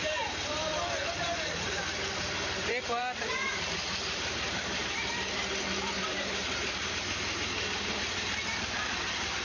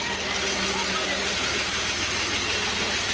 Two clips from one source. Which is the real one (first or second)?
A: second